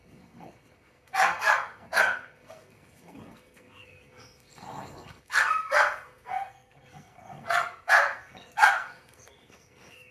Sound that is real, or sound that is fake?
fake